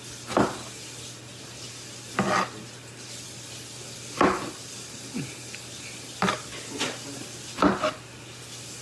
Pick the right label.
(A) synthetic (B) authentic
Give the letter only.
B